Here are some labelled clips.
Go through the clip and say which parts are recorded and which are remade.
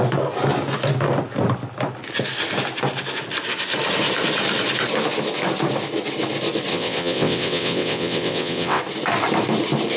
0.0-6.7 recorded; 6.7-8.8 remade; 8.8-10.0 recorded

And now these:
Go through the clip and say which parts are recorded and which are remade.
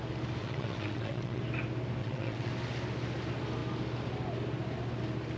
0.0-0.4 recorded; 0.4-1.4 remade; 1.4-2.0 recorded; 2.0-2.5 remade; 2.5-5.4 recorded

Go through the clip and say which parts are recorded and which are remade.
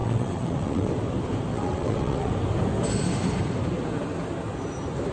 0.0-0.9 remade; 0.9-1.5 recorded; 1.5-2.3 remade; 2.3-5.1 recorded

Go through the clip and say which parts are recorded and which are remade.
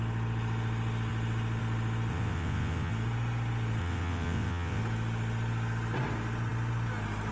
0.0-2.1 recorded; 2.1-2.9 remade; 2.9-3.8 recorded; 3.8-4.8 remade; 4.8-7.3 recorded